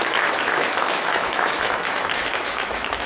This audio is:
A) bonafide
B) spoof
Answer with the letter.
B